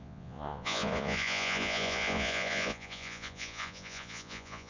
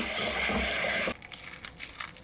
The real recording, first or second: second